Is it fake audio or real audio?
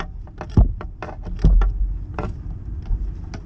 real